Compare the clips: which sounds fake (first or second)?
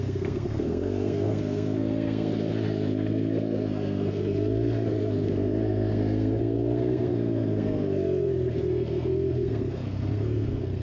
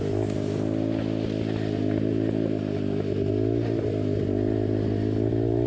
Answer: first